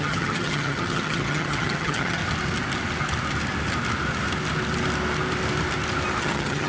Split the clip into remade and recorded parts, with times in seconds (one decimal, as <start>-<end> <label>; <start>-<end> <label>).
0.0-2.2 remade; 2.2-6.2 recorded; 6.2-6.7 remade